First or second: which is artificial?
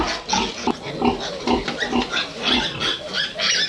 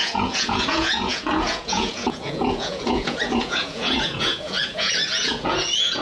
second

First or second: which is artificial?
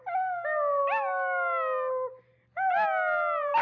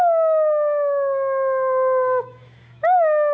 second